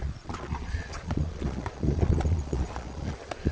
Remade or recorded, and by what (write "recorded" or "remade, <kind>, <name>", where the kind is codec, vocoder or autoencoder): remade, vocoder, Vocos